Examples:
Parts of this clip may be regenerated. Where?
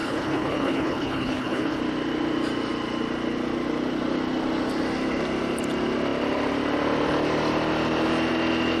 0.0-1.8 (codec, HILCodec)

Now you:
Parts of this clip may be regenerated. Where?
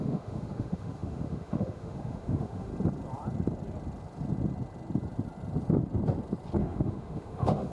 0.0-2.7 (autoencoder, DAC-VAE); 6.6-7.7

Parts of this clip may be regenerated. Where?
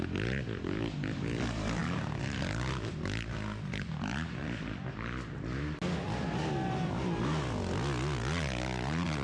none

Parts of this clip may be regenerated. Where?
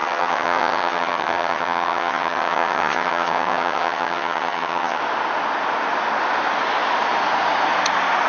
0.0-5.0 (vocoder, HiFi-GAN)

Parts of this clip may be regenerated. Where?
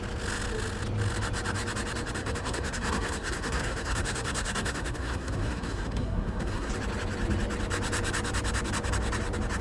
2.2-6.7 (codec, SNAC)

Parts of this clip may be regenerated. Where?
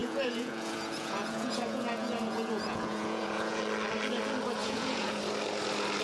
0.0-3.6 (vocoder, Vocos); 4.6-5.2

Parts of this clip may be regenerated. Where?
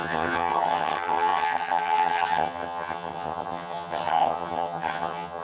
0.0-5.4 (vocoder, HiFi-GAN)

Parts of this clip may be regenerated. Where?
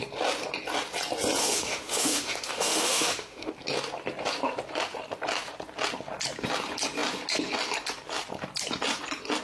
1.4-3.5 (autoencoder, DAC-VAE)